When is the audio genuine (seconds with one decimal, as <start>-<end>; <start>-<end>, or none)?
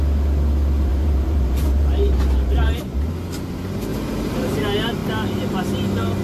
0.0-0.9; 3.1-3.9; 4.6-6.2